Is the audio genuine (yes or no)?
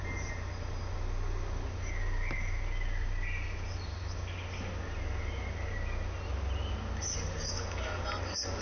yes